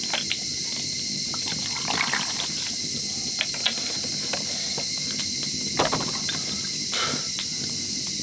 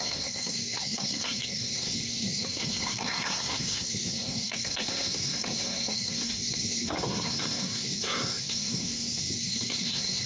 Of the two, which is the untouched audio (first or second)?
first